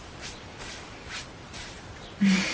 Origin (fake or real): fake